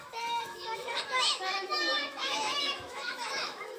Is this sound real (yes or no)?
no